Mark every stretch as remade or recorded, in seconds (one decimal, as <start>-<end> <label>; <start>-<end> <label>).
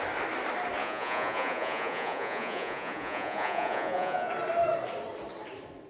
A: 0.0-0.8 recorded; 0.8-4.3 remade; 4.3-5.9 recorded